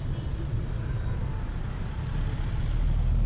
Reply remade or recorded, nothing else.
recorded